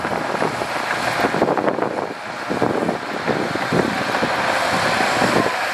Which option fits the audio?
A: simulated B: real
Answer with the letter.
B